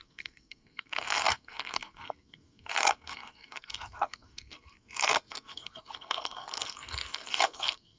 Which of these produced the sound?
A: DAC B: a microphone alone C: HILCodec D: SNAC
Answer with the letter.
D